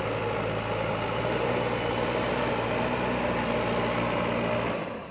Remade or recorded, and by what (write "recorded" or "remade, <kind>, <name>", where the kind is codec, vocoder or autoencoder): recorded